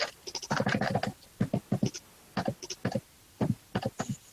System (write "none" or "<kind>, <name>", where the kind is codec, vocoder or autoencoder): none